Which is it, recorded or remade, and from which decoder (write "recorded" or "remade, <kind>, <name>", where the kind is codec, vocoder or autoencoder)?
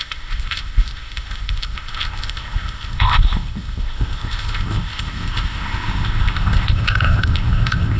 remade, codec, ZipCodec